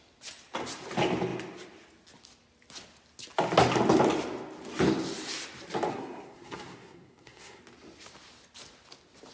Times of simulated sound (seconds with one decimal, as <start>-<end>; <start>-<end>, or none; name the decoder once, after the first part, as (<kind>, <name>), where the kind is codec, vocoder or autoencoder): 5.9-7.6 (codec, SNAC)